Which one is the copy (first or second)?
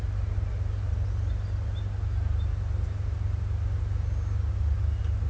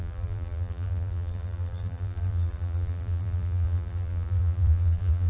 second